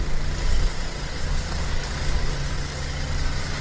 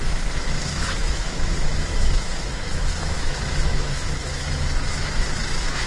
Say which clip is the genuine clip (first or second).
first